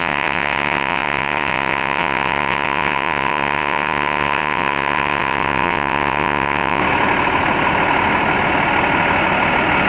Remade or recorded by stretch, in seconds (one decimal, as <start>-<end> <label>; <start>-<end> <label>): 0.0-6.8 remade; 6.8-9.9 recorded